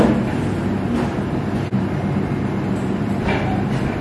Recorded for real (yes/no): yes